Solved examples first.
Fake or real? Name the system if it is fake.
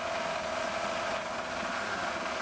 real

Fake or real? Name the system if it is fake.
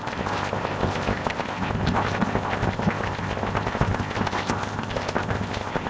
fake, codec, ZipCodec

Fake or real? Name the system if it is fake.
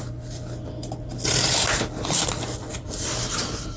real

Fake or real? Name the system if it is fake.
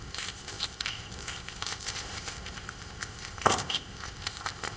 fake, codec, ZipCodec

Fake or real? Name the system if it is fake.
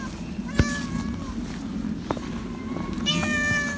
real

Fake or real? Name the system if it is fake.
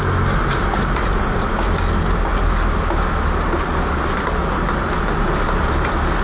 real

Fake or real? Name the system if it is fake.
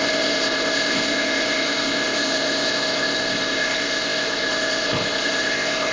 fake, codec, ZipCodec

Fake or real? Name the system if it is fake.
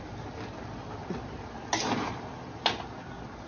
real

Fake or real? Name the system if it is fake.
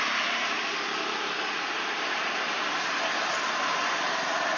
real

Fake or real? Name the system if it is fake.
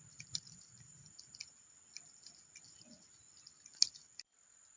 real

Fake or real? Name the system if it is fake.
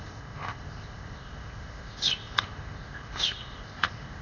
fake, codec, ZipCodec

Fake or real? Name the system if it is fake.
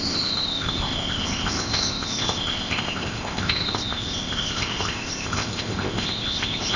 fake, codec, ZipCodec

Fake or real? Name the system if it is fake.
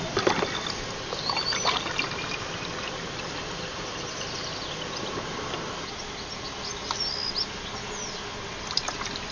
real